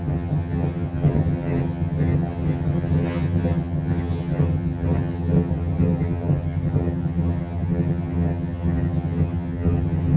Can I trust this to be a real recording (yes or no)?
no